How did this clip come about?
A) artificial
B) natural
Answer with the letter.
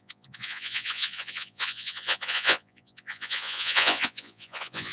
A